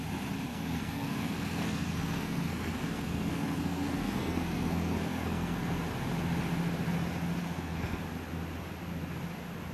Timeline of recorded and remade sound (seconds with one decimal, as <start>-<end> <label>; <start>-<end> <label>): 0.0-0.5 recorded; 0.5-5.8 remade; 5.8-7.4 recorded; 7.4-8.0 remade; 8.0-9.7 recorded